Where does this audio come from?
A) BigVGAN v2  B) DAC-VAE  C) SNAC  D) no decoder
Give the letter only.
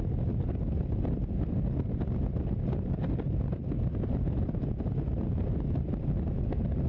D